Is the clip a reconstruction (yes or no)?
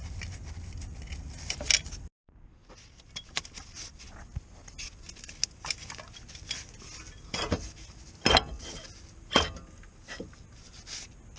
no